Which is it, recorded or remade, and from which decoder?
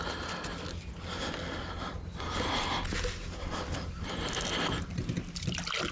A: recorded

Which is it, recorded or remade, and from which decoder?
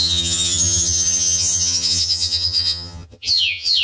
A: remade, vocoder, HiFi-GAN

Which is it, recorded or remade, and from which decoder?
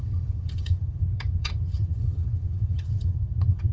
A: remade, vocoder, HiFi-GAN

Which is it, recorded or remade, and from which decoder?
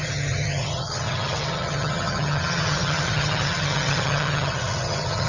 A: remade, vocoder, HiFi-GAN